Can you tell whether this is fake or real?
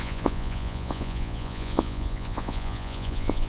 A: fake